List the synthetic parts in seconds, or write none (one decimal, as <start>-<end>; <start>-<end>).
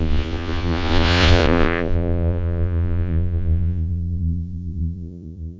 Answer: 0.0-5.6